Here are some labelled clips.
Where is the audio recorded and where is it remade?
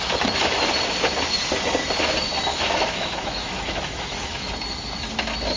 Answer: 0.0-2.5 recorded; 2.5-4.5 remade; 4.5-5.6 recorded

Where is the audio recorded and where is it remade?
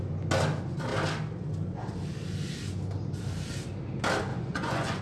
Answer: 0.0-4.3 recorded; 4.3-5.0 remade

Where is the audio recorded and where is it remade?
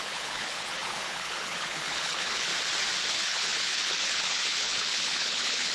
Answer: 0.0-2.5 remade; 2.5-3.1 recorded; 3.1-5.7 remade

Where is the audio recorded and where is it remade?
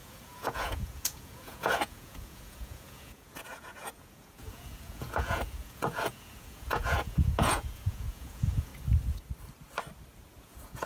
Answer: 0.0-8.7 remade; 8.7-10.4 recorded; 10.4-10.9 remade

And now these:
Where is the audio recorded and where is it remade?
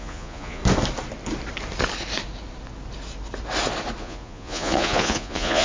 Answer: 0.0-0.6 remade; 0.6-4.0 recorded; 4.0-5.6 remade